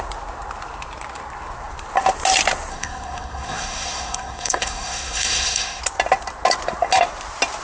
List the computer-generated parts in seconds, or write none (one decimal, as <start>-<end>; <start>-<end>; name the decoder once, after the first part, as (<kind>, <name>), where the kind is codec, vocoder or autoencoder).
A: 2.7-5.8 (codec, SNAC)